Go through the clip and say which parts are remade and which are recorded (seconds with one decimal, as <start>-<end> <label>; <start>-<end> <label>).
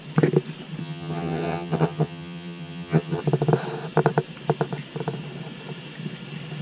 0.0-0.8 recorded; 0.8-3.2 remade; 3.2-6.6 recorded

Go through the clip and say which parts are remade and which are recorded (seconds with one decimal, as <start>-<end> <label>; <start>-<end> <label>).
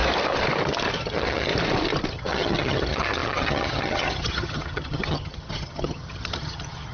0.0-1.0 recorded; 1.0-1.5 remade; 1.5-2.1 recorded; 2.1-6.9 remade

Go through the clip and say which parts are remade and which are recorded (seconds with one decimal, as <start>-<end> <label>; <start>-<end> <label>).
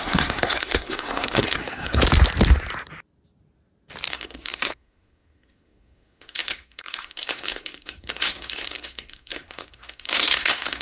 0.0-2.0 remade; 2.0-4.1 recorded; 4.1-10.8 remade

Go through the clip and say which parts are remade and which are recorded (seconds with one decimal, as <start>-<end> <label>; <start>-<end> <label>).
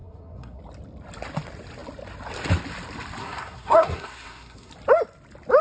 0.0-0.6 remade; 0.6-3.2 recorded; 3.2-4.7 remade; 4.7-5.6 recorded